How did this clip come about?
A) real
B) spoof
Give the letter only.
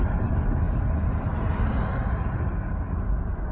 A